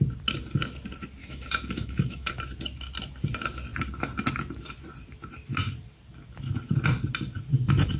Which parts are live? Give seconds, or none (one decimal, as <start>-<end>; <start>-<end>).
0.0-1.2; 2.3-8.0